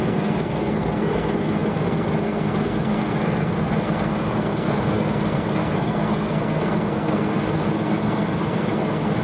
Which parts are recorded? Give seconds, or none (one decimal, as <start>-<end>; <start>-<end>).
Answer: none